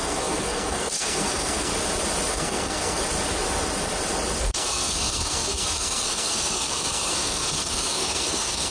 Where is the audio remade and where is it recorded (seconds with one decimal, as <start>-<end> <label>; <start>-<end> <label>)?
0.0-1.7 remade; 1.7-2.3 recorded; 2.3-3.0 remade; 3.0-4.4 recorded; 4.4-8.7 remade

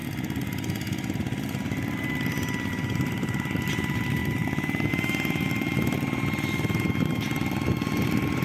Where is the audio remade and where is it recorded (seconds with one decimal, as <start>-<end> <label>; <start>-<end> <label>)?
0.0-2.7 recorded; 2.7-4.2 remade; 4.2-4.9 recorded; 4.9-8.4 remade

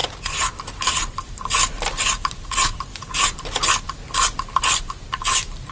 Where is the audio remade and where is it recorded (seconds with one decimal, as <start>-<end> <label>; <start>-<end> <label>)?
0.0-3.4 remade; 3.4-5.7 recorded

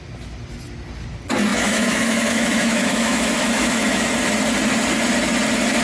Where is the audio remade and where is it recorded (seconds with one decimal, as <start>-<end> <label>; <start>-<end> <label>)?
0.0-1.5 recorded; 1.5-4.1 remade; 4.1-5.8 recorded

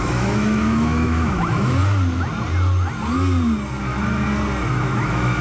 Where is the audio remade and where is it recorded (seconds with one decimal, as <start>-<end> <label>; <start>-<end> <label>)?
0.0-1.8 remade; 1.8-3.8 recorded; 3.8-4.2 remade; 4.2-4.7 recorded; 4.7-5.4 remade